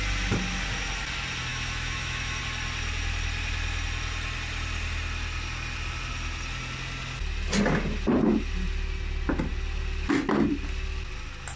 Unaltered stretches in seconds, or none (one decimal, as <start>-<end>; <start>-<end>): 0.0-1.5; 2.4-11.6